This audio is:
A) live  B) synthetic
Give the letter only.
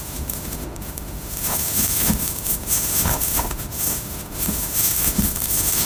B